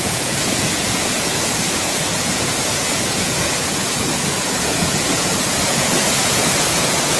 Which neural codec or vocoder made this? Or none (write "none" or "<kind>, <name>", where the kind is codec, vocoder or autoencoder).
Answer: vocoder, Vocos